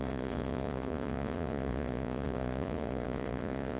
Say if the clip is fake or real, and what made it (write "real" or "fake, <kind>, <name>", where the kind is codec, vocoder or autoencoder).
fake, vocoder, Vocos